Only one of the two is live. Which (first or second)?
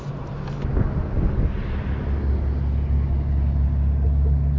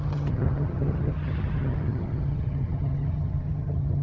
first